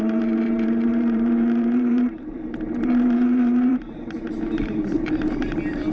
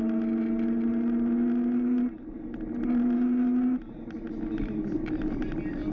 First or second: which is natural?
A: second